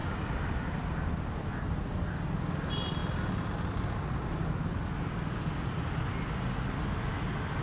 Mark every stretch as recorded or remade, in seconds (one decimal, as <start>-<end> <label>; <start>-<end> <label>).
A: 0.0-7.6 recorded